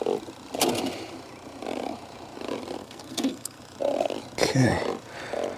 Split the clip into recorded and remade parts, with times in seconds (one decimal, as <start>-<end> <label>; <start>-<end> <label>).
0.0-2.8 recorded; 2.8-3.6 remade; 3.6-5.6 recorded